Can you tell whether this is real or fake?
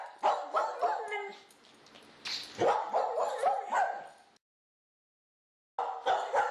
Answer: real